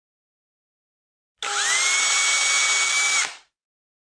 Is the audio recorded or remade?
recorded